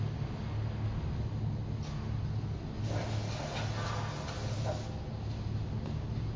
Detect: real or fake real